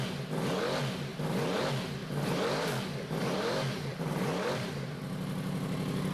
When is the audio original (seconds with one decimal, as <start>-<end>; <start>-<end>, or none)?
0.0-1.1; 1.6-2.0; 5.0-6.1